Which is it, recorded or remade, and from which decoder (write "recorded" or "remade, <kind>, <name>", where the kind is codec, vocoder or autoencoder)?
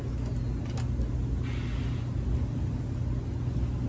recorded